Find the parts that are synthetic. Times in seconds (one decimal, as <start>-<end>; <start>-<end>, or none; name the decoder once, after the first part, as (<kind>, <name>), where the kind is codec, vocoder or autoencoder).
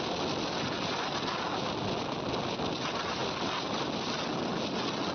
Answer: none